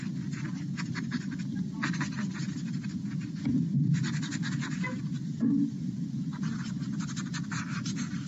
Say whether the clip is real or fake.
real